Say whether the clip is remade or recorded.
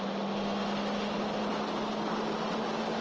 recorded